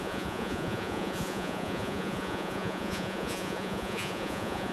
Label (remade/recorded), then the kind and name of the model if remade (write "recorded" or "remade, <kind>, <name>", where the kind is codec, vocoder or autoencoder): remade, vocoder, Vocos